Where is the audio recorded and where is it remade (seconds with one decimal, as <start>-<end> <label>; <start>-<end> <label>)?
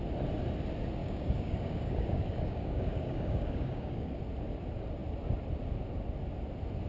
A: 0.0-1.0 recorded; 1.0-4.2 remade; 4.2-6.9 recorded